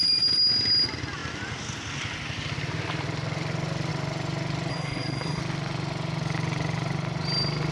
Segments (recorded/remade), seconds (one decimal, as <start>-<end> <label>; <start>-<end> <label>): 0.0-4.7 recorded; 4.7-5.4 remade; 5.4-7.7 recorded